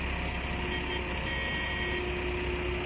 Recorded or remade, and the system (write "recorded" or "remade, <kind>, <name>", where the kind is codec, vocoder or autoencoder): recorded